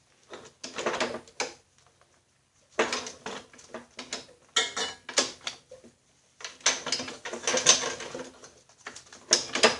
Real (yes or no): yes